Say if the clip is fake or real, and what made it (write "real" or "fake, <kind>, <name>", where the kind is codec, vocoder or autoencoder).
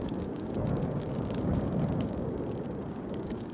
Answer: fake, codec, DAC